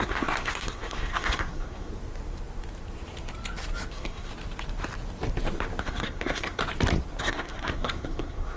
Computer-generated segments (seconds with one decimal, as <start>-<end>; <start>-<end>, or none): 0.0-1.9; 3.9-4.3; 5.8-6.6; 7.2-8.6